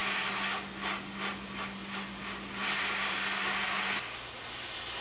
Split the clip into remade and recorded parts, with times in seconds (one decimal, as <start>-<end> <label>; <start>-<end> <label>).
0.0-1.8 recorded; 1.8-3.6 remade; 3.6-5.0 recorded